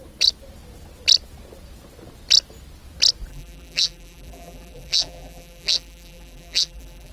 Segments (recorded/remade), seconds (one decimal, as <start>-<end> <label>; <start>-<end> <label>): 0.0-3.3 recorded; 3.3-7.1 remade